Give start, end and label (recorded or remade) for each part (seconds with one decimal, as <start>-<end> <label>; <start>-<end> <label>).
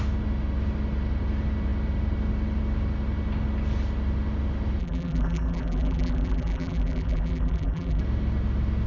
0.0-4.8 recorded; 4.8-8.0 remade; 8.0-8.9 recorded